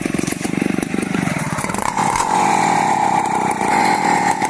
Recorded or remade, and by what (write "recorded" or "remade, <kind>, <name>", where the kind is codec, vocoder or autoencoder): remade, vocoder, Vocos